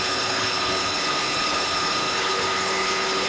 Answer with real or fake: fake